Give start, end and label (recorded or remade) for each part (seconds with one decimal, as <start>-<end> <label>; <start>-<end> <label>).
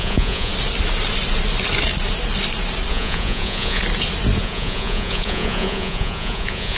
0.0-0.5 remade; 0.5-2.9 recorded; 2.9-3.8 remade; 3.8-4.4 recorded; 4.4-6.8 remade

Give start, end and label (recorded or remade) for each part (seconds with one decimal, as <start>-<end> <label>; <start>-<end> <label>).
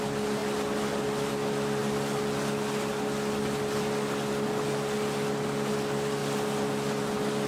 0.0-7.5 recorded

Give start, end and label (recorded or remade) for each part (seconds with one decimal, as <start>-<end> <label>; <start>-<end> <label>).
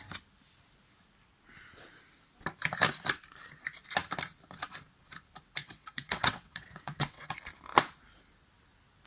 0.0-5.6 recorded; 5.6-7.4 remade; 7.4-9.1 recorded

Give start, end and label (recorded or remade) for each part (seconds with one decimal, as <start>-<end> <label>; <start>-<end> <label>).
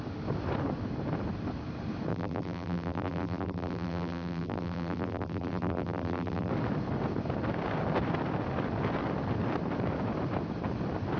0.0-2.1 recorded; 2.1-6.5 remade; 6.5-11.2 recorded